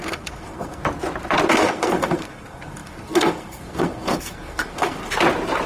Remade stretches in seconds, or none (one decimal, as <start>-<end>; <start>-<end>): 0.0-0.8; 1.5-5.0